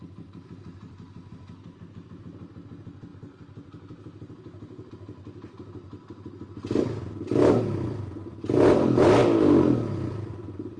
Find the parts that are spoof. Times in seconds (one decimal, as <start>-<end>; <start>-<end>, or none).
none